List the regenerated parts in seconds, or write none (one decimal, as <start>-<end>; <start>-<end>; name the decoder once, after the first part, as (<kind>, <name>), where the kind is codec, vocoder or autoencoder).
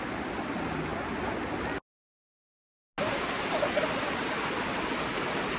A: none